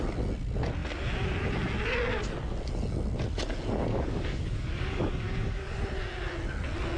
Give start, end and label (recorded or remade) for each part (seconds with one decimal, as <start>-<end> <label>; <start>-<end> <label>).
0.0-3.9 recorded; 3.9-5.8 remade; 5.8-7.0 recorded